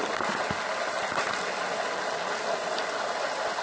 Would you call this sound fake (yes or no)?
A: no